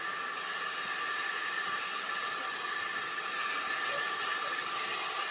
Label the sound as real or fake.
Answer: real